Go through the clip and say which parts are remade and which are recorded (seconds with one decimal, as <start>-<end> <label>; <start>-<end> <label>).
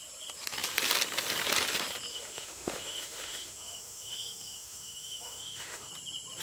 0.0-2.1 recorded; 2.1-5.9 remade; 5.9-6.4 recorded